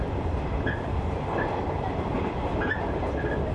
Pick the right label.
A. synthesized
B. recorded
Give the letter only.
B